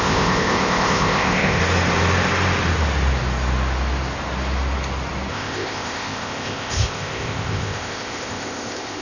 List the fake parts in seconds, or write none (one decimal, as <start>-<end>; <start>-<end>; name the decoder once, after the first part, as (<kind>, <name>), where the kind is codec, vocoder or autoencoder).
0.0-1.6 (codec, ZipCodec); 5.3-9.0